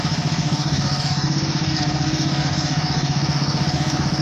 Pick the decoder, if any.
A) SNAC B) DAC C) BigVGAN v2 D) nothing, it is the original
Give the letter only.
B